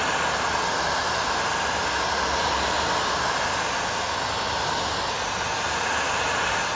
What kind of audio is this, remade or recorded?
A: recorded